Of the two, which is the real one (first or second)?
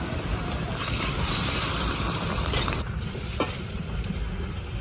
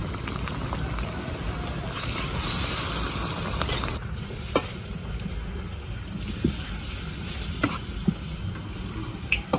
second